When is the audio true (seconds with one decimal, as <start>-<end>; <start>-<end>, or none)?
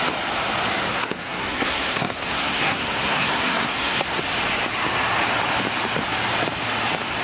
0.0-0.9; 4.2-7.2